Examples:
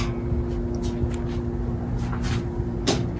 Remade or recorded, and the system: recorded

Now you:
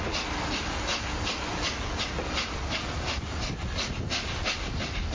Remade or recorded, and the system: recorded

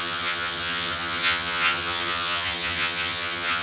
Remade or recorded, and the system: remade, vocoder, HiFi-GAN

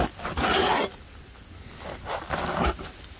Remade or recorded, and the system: recorded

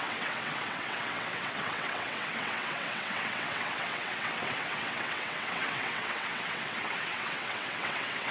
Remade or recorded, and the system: remade, vocoder, WaveNeXt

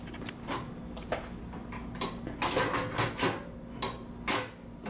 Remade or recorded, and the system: recorded